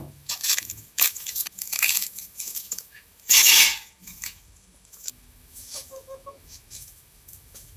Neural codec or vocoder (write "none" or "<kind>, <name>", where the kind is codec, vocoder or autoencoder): autoencoder, DAC-VAE